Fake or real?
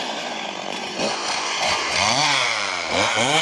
fake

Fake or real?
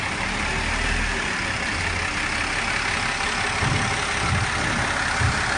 real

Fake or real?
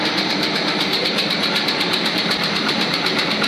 fake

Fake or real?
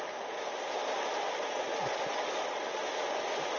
real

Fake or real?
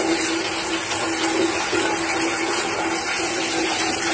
real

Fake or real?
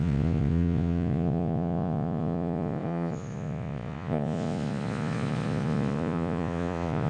fake